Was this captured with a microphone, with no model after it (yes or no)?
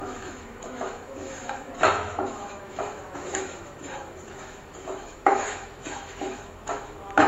no